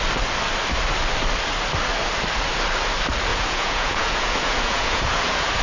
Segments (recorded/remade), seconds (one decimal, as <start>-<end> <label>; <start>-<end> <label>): 0.0-3.3 recorded; 3.3-5.6 remade